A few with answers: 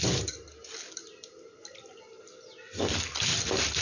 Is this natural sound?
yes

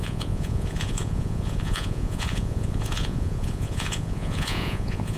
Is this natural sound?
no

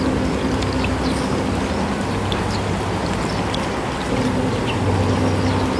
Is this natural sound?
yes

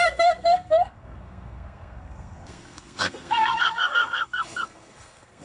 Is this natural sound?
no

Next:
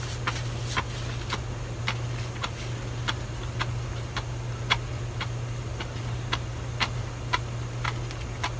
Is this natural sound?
yes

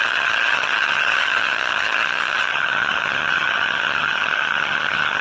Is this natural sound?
no